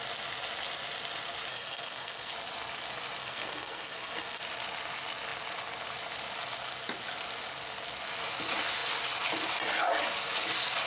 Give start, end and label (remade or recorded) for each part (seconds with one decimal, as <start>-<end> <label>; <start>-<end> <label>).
0.0-1.5 recorded; 1.5-2.3 remade; 2.3-3.2 recorded; 3.2-4.4 remade; 4.4-10.9 recorded